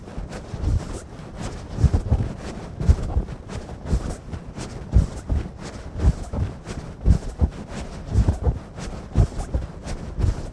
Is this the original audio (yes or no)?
yes